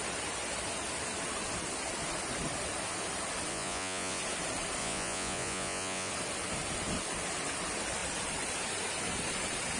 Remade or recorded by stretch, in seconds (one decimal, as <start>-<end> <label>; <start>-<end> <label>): 0.0-3.5 recorded; 3.5-4.2 remade; 4.2-4.8 recorded; 4.8-6.1 remade; 6.1-9.8 recorded